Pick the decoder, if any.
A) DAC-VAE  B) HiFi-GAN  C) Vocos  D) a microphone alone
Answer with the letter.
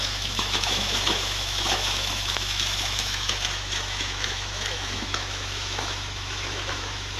A